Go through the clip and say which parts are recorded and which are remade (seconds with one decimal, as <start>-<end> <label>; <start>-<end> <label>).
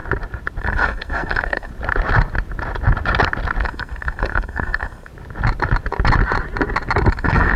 0.0-0.6 recorded; 0.6-1.7 remade; 1.7-3.6 recorded; 3.6-5.1 remade; 5.1-7.1 recorded; 7.1-7.6 remade